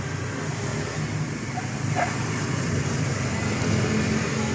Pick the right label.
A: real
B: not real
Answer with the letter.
A